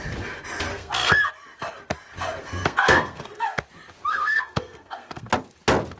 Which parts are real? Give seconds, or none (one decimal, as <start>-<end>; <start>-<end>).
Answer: 0.0-0.7; 1.3-2.4; 3.6-4.1; 5.3-6.0